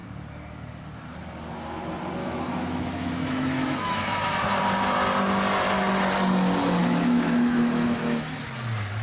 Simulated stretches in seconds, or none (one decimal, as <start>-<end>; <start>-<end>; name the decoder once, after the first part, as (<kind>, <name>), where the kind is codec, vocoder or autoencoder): 2.2-4.3 (autoencoder, DAC-VAE); 6.8-8.5